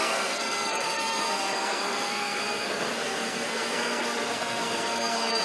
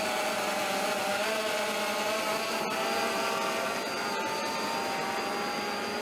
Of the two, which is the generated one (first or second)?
first